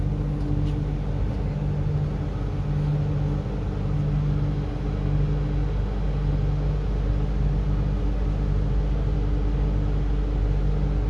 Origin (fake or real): real